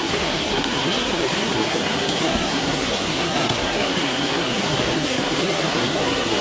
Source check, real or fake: fake